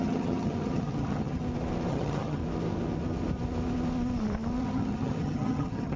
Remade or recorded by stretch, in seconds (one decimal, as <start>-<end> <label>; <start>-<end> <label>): 0.0-1.4 remade; 1.4-1.9 recorded; 1.9-2.4 remade; 2.4-4.6 recorded; 4.6-6.0 remade